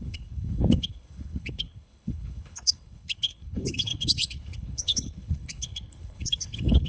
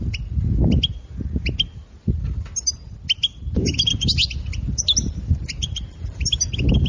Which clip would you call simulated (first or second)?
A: first